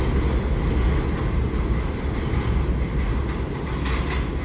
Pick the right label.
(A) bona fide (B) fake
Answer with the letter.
A